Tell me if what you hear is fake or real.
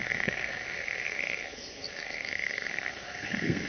fake